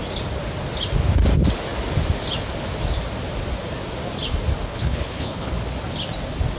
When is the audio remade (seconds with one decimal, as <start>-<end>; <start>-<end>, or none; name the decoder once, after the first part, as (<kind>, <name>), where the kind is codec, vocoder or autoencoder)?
4.7-5.5 (codec, HILCodec)